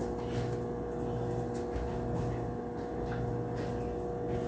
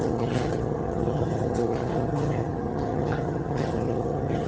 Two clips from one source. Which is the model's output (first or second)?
second